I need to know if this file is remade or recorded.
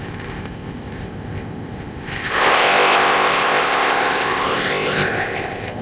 remade